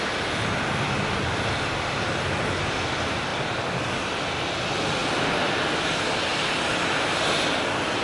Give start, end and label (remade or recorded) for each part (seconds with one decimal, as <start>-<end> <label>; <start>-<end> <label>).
0.0-5.0 recorded; 5.0-5.6 remade; 5.6-8.0 recorded